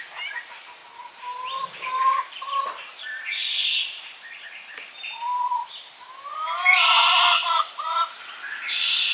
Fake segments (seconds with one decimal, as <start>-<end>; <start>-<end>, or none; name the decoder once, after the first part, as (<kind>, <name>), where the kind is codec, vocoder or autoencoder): 0.0-0.8 (vocoder, BigVGAN v2); 1.9-3.4; 7.0-9.1

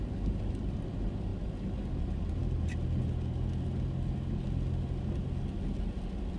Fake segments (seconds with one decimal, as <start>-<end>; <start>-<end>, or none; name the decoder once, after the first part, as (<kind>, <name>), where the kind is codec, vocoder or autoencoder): 0.0-1.3 (vocoder, BigVGAN v2); 1.9-2.4

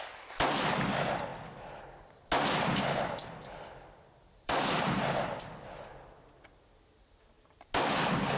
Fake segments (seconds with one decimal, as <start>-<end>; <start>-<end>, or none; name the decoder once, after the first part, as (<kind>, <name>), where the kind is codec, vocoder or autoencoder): 3.2-4.9 (vocoder, BigVGAN v2)

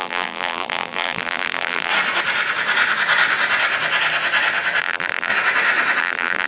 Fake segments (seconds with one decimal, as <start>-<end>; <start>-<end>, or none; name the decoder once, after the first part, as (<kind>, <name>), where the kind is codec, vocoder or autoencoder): 0.0-1.9 (vocoder, BigVGAN v2); 4.8-5.3; 6.0-6.5

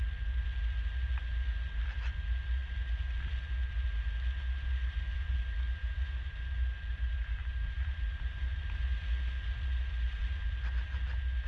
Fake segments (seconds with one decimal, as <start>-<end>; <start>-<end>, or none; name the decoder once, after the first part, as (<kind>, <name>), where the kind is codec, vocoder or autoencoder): 5.8-6.4 (vocoder, BigVGAN v2); 6.9-8.6